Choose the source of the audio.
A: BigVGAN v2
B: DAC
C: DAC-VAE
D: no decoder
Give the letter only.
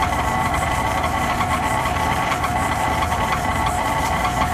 A